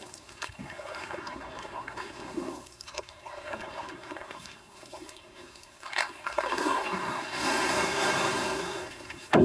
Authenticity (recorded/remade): remade